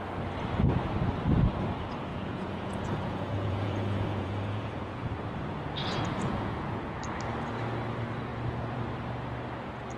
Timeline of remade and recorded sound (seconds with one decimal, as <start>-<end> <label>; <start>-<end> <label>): 0.0-2.1 recorded; 2.1-5.1 remade; 5.1-5.8 recorded; 5.8-7.0 remade; 7.0-8.3 recorded; 8.3-8.8 remade; 8.8-10.0 recorded